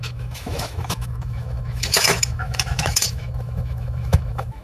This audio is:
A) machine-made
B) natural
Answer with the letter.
A